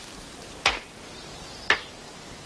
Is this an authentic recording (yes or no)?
yes